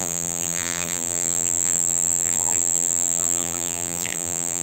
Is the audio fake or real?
fake